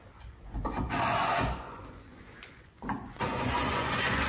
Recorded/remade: remade